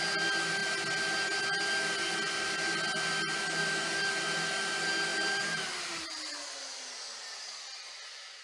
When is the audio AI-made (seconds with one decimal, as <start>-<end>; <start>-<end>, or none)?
3.6-4.1; 5.1-6.4